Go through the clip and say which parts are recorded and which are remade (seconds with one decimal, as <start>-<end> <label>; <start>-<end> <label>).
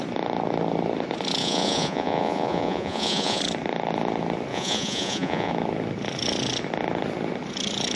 0.0-1.4 recorded; 1.4-3.4 remade; 3.4-4.5 recorded; 4.5-5.5 remade; 5.5-8.0 recorded